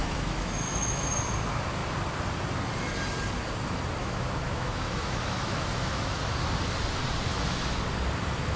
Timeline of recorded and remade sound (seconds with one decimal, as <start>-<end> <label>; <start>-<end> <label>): 0.0-1.1 remade; 1.1-4.0 recorded; 4.0-6.2 remade; 6.2-7.3 recorded; 7.3-7.8 remade; 7.8-8.6 recorded